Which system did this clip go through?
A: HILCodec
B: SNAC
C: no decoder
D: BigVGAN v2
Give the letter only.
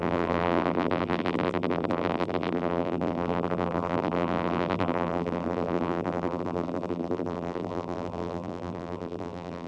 D